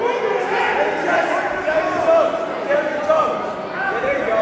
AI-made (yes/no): no